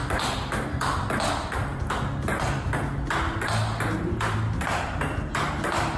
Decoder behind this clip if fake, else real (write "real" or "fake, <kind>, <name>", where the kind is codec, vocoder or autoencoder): real